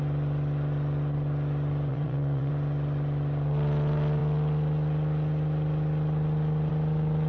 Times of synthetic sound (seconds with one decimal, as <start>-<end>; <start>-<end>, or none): 1.9-2.5